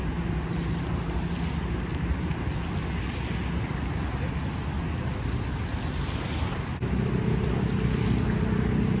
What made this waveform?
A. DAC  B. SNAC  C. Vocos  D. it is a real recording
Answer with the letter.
D